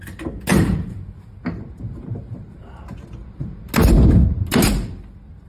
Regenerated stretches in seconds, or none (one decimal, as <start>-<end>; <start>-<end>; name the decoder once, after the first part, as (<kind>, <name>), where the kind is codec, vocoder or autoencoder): none